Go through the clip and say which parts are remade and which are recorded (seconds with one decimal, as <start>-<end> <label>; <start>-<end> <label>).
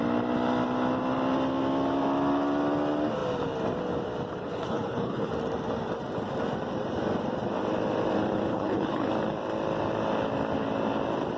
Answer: 0.0-4.4 recorded; 4.4-5.3 remade; 5.3-8.5 recorded; 8.5-9.1 remade; 9.1-11.4 recorded